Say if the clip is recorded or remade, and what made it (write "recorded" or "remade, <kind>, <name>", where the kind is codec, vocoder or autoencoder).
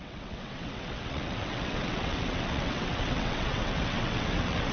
remade, vocoder, WaveNeXt